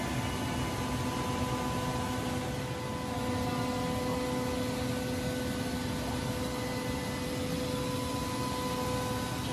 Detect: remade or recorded recorded